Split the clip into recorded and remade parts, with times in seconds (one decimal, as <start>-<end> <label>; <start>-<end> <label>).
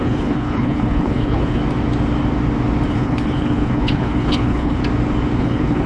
0.0-1.6 remade; 1.6-2.9 recorded; 2.9-4.8 remade; 4.8-5.4 recorded; 5.4-5.9 remade